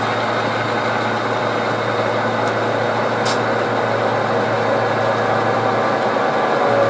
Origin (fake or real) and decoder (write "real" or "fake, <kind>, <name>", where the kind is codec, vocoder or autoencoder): real